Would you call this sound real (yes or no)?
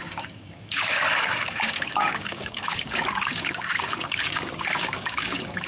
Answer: no